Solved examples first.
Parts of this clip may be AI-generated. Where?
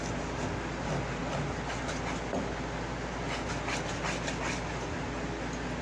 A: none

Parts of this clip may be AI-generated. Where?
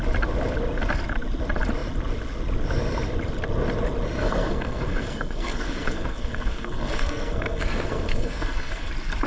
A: 4.2-8.9 (codec, SNAC)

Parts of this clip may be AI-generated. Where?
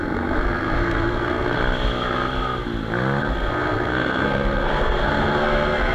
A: 0.0-1.6 (codec, SNAC); 3.2-5.9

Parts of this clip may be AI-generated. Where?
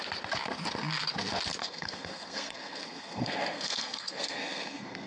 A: 1.6-5.1 (codec, SNAC)